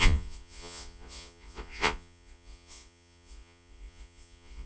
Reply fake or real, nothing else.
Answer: fake